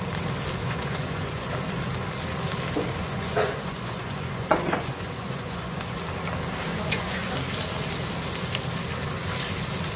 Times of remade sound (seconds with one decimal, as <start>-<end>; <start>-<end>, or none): 0.6-1.5; 3.0-6.0; 6.7-7.3